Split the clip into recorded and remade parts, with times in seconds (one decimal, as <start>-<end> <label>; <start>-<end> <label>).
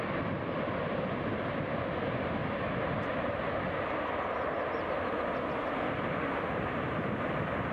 0.0-7.7 recorded